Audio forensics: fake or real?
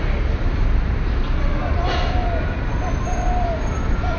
real